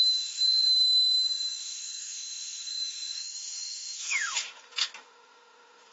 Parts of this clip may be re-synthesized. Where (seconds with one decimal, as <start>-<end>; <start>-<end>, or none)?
0.0-5.9